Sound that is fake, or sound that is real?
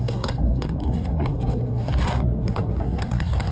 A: fake